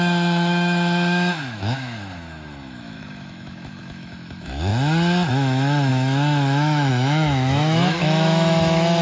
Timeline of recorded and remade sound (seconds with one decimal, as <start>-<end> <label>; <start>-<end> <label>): 0.0-4.7 remade; 4.7-5.3 recorded; 5.3-9.0 remade